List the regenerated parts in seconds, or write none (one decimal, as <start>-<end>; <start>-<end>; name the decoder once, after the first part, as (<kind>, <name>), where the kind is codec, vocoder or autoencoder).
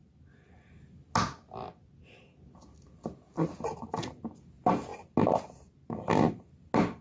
none